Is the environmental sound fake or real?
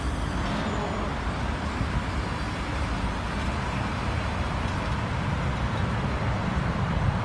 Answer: real